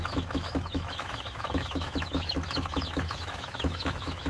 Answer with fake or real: fake